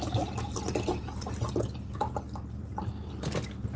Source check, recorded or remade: recorded